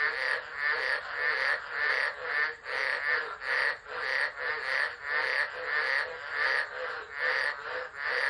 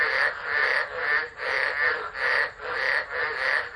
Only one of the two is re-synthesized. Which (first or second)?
second